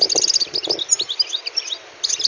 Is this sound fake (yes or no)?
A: no